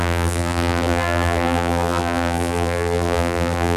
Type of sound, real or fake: fake